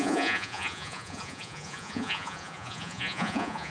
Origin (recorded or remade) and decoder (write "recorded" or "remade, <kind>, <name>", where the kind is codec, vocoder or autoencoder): remade, vocoder, Vocos